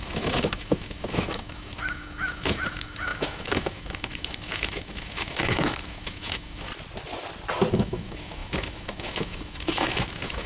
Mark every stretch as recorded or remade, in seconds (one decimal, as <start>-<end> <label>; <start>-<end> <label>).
0.0-6.7 remade; 6.7-7.7 recorded; 7.7-10.5 remade